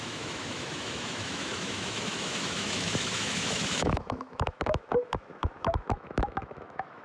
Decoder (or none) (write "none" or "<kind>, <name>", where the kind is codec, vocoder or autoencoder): autoencoder, DAC-VAE